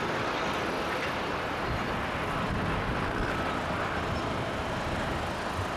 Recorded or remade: recorded